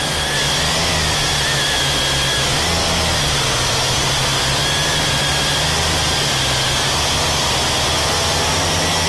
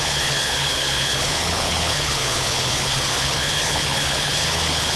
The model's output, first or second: second